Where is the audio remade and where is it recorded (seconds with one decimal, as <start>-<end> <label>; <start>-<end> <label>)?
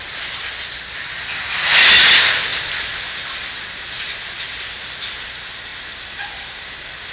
0.0-7.1 recorded